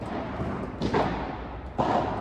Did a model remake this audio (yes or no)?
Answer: no